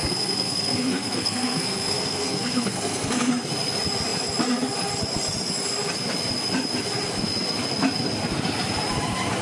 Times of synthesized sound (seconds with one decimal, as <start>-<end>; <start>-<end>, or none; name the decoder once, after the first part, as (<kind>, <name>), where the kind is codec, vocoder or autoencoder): 0.0-3.3 (codec, SNAC)